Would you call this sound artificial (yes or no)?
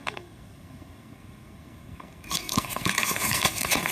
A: yes